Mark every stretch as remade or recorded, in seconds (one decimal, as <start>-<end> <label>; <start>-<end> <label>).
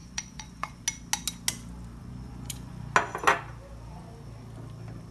0.0-0.8 remade; 0.8-2.0 recorded; 2.0-2.8 remade; 2.8-5.1 recorded